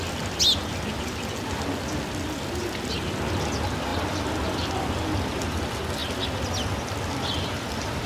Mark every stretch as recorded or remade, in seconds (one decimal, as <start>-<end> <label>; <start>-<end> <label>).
0.0-8.1 recorded